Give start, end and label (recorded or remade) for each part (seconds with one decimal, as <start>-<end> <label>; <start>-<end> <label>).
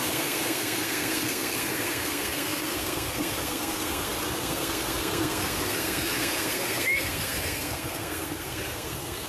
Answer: 0.0-9.3 remade